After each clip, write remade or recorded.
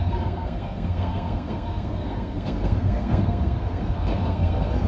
remade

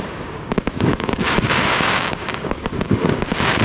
remade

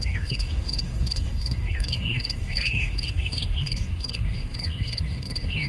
remade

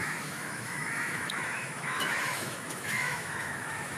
remade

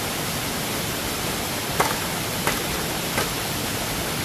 recorded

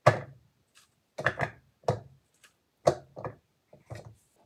recorded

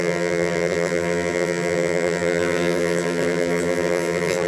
remade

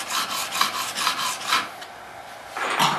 recorded